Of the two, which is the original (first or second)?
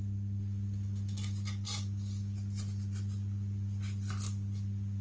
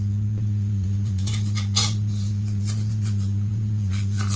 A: first